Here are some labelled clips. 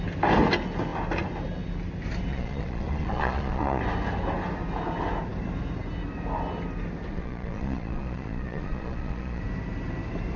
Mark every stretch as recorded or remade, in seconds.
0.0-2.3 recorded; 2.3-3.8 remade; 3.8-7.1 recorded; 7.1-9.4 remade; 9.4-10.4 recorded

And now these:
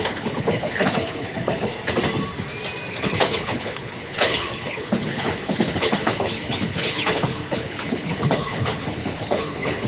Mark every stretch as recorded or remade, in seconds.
0.0-1.7 remade; 1.7-2.9 recorded; 2.9-9.9 remade